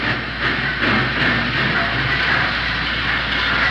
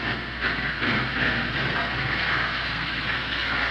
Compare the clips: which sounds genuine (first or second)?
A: first